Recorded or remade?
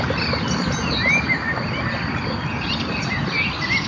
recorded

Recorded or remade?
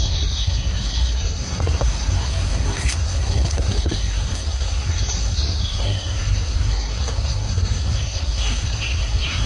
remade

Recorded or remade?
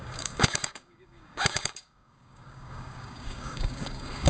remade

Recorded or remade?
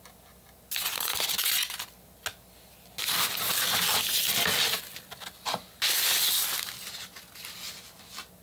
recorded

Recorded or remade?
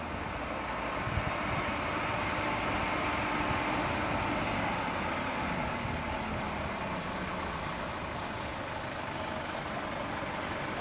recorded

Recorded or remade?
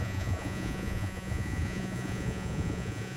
remade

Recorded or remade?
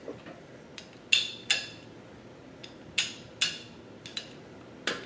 recorded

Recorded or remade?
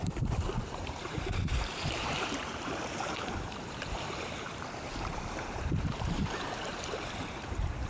remade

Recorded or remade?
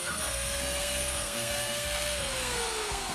remade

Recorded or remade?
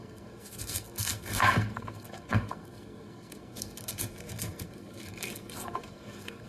remade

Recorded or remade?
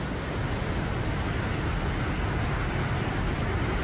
recorded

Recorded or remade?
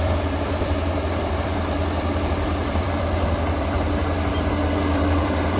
remade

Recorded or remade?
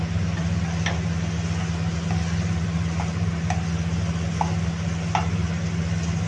recorded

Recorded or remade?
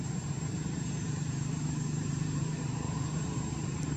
remade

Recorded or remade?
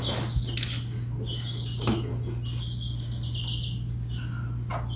recorded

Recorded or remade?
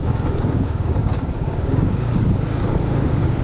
remade